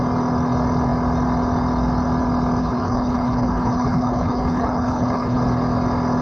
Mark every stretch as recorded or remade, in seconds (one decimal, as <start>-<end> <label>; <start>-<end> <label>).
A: 0.0-2.6 recorded; 2.6-5.4 remade; 5.4-6.2 recorded